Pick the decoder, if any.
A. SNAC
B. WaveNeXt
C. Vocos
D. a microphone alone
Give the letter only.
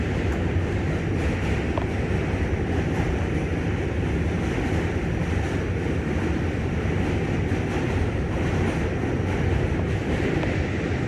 D